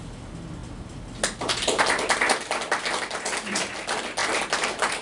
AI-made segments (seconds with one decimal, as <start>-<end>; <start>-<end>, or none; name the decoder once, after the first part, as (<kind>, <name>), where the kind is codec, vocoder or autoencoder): none